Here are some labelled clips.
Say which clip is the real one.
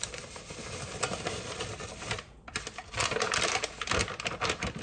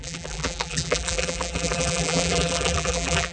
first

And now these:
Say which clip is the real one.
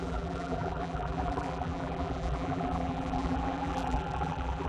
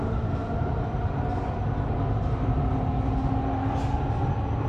second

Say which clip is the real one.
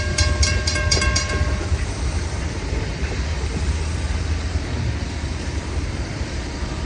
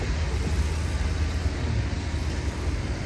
second